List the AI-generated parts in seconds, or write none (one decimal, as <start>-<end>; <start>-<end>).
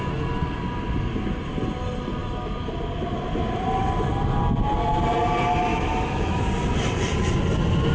5.7-6.4